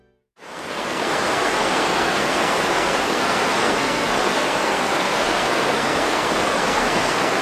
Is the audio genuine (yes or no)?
no